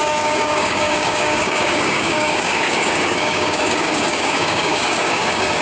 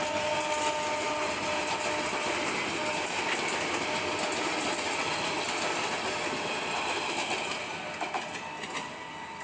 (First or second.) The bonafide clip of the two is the second